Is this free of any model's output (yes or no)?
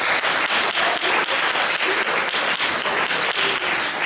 yes